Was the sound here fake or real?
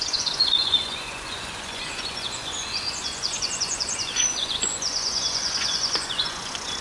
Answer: fake